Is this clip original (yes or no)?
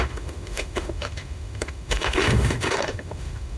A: no